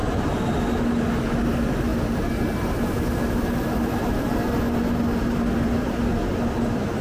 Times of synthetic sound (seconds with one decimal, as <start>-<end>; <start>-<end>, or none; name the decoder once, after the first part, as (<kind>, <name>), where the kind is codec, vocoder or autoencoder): none